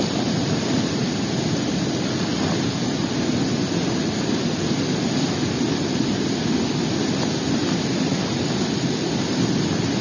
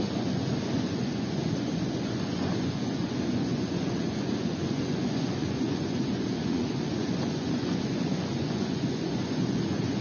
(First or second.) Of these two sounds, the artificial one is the second